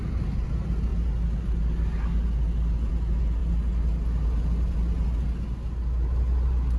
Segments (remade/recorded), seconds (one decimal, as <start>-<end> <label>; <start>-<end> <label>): 0.0-6.8 recorded